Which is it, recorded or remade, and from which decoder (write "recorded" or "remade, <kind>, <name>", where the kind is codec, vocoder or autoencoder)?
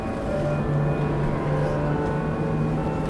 recorded